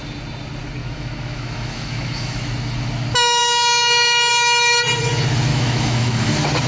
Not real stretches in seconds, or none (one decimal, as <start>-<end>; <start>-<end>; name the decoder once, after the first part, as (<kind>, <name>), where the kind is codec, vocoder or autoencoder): 0.8-2.5 (autoencoder, DAC-VAE); 5.5-6.3